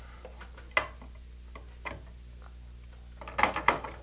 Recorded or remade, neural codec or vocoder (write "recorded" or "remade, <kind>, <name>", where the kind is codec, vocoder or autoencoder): recorded